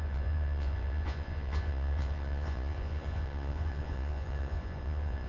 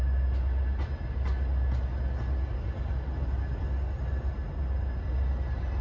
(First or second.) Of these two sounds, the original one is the second